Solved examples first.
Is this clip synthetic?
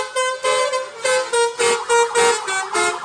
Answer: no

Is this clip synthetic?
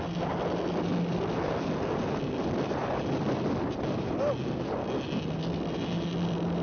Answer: no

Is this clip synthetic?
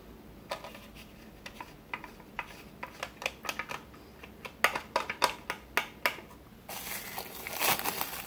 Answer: no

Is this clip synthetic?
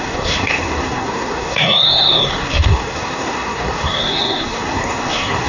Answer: yes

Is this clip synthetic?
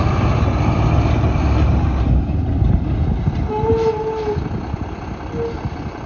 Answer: no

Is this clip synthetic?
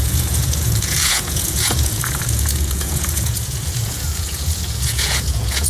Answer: yes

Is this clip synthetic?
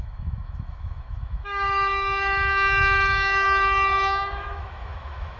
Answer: yes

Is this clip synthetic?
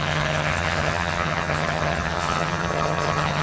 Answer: yes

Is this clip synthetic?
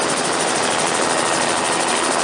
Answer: no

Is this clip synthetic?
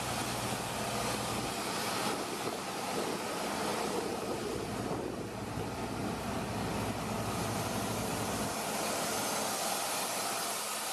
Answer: no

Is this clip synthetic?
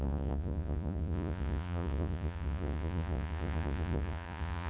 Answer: yes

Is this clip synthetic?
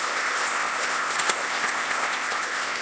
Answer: yes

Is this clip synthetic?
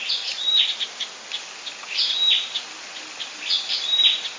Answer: no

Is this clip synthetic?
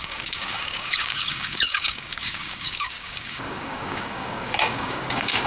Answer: yes